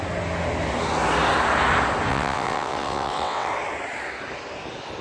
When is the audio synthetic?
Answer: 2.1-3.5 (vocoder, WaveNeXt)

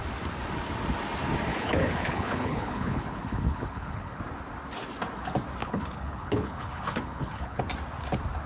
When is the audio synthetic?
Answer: 1.5-4.2 (codec, HILCodec); 5.6-7.6

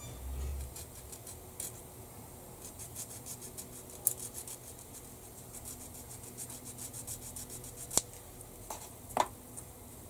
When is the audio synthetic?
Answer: 0.5-1.0 (vocoder, BigVGAN v2); 1.8-3.5; 5.3-6.5

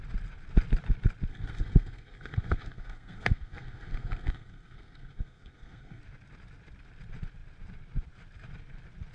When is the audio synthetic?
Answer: 1.3-6.0 (codec, SNAC)

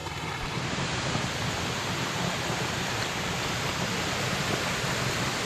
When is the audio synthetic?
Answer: 0.0-0.8 (vocoder, BigVGAN v2); 2.2-3.0

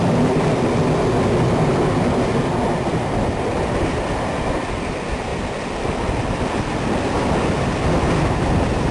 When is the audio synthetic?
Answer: 2.9-4.8 (vocoder, BigVGAN v2)

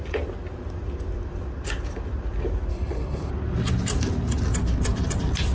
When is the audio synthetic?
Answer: 2.7-3.3 (codec, HILCodec)

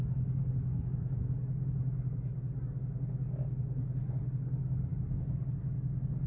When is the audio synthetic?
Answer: none